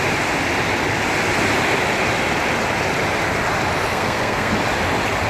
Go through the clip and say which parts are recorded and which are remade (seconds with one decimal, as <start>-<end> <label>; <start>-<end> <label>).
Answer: 0.0-3.9 recorded; 3.9-4.5 remade; 4.5-5.3 recorded